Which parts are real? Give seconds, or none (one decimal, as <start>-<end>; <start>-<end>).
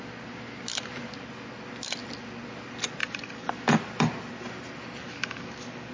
0.0-3.0; 3.5-5.0